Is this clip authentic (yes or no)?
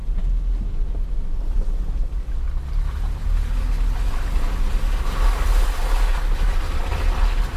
yes